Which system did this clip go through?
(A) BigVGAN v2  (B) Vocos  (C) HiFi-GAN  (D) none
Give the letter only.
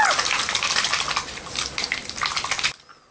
D